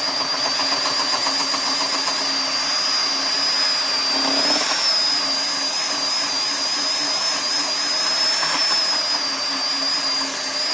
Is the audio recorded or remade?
recorded